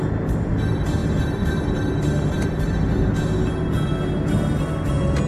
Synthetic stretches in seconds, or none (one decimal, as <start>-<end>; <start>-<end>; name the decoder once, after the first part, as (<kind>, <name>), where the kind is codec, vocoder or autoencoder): none